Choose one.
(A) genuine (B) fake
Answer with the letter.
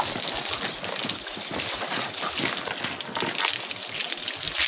A